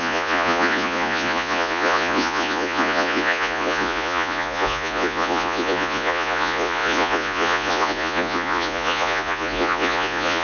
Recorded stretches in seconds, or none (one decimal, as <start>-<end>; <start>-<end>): none